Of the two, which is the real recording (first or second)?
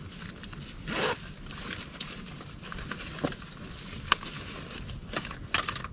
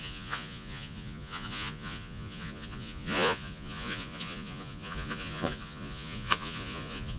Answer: first